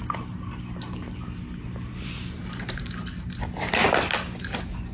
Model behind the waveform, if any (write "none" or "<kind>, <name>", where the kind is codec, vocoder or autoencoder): none